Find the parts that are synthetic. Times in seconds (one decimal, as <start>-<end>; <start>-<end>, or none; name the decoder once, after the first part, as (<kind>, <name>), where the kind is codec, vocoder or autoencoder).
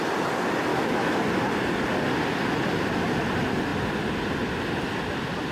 0.7-1.2 (autoencoder, DAC-VAE)